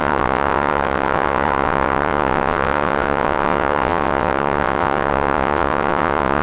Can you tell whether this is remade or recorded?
remade